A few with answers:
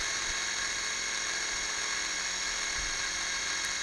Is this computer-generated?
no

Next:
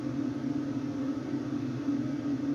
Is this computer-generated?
no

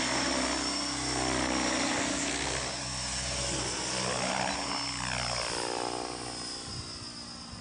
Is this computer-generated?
no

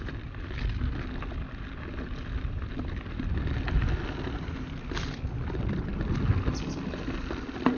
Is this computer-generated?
no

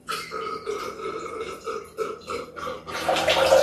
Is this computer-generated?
no